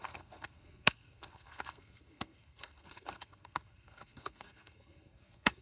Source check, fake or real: fake